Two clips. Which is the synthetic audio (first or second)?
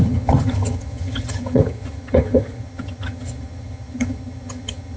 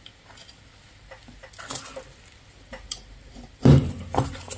first